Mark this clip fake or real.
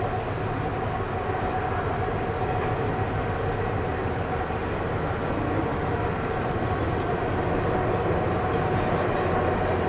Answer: real